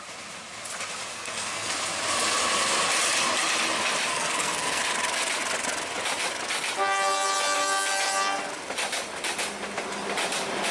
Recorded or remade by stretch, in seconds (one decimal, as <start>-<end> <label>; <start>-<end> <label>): 0.0-1.1 recorded; 1.1-1.7 remade; 1.7-4.1 recorded; 4.1-4.8 remade; 4.8-10.7 recorded